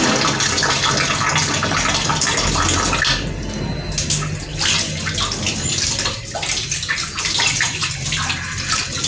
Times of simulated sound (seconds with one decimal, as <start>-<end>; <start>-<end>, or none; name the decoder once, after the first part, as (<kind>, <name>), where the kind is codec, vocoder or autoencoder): none